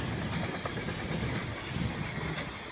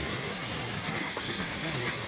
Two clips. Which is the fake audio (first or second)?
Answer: second